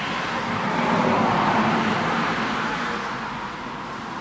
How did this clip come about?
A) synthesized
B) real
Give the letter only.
B